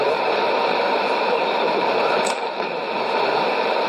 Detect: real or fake fake